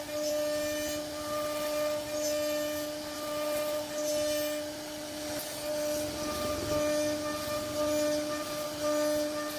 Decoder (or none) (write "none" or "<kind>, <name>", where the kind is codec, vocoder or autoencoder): none